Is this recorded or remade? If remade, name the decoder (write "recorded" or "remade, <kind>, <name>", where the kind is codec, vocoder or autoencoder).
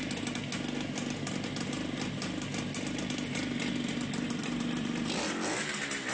recorded